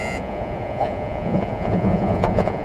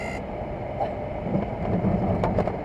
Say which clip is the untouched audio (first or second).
second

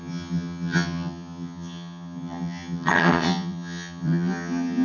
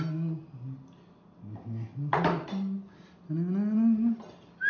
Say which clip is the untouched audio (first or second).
second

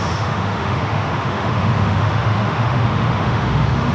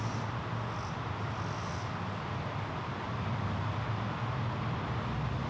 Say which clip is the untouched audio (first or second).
second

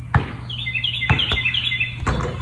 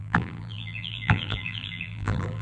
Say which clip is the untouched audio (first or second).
first